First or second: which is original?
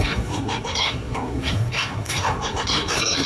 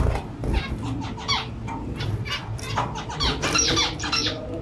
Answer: second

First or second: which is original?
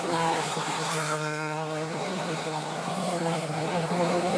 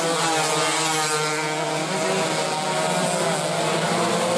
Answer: second